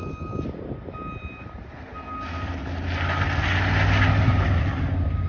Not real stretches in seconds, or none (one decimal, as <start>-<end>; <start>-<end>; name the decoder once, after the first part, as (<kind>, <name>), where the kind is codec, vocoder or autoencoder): none